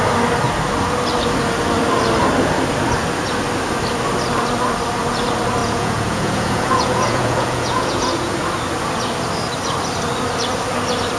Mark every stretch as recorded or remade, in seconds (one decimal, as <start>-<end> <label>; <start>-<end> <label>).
0.0-5.6 recorded; 5.6-8.4 remade; 8.4-11.2 recorded